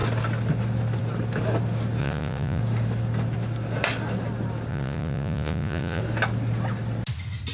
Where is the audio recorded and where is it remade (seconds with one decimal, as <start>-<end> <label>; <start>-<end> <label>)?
0.0-2.0 recorded; 2.0-2.6 remade; 2.6-4.7 recorded; 4.7-6.0 remade; 6.0-7.5 recorded